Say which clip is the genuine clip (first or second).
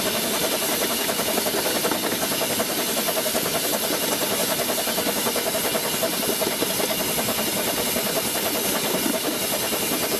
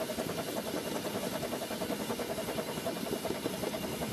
first